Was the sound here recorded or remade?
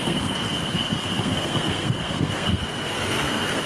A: remade